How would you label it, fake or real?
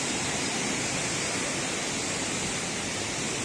real